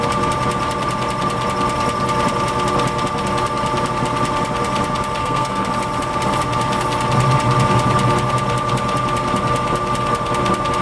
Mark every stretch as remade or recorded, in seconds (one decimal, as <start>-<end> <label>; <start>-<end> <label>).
0.0-5.2 recorded; 5.2-5.7 remade; 5.7-10.8 recorded